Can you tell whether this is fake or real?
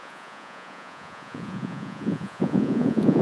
fake